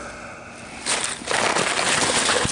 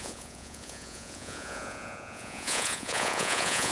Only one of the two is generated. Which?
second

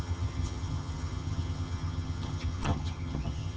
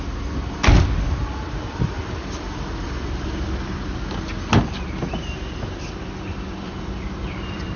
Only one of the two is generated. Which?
first